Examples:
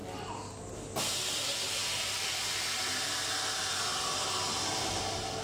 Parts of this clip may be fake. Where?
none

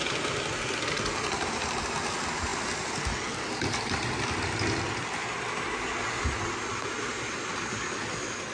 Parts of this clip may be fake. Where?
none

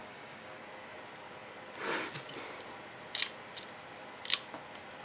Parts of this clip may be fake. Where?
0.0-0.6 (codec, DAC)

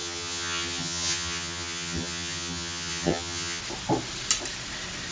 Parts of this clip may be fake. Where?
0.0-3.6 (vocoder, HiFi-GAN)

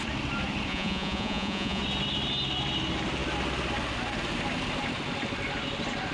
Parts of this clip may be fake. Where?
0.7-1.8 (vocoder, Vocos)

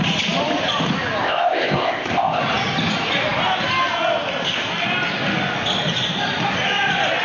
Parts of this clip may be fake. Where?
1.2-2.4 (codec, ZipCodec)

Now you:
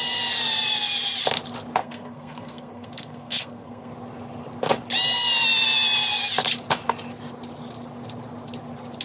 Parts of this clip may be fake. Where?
1.8-3.9 (codec, SNAC)

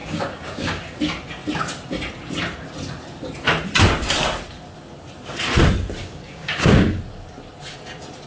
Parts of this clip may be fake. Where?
0.0-0.8 (codec, DAC); 6.0-7.0